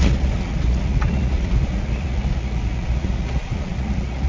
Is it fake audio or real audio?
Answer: fake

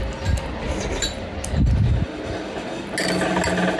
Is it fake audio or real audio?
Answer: real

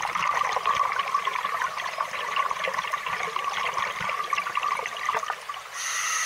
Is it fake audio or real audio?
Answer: real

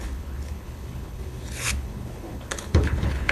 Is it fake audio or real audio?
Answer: fake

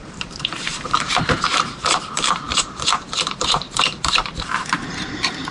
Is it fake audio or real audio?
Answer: fake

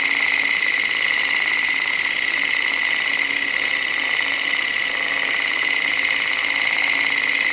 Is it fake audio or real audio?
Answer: real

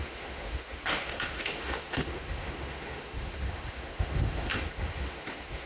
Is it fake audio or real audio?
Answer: fake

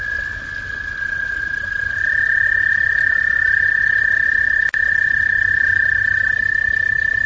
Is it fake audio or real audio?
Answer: real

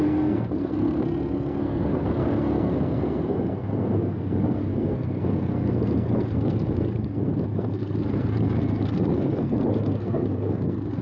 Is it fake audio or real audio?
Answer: fake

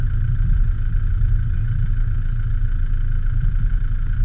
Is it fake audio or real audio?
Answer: real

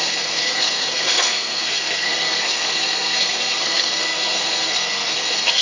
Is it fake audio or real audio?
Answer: fake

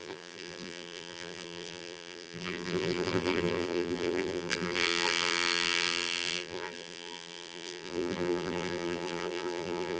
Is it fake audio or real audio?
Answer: fake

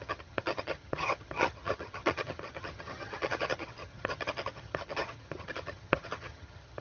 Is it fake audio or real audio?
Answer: fake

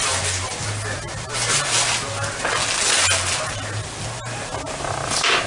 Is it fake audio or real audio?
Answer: real